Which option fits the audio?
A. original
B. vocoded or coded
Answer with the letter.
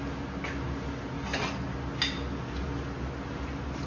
A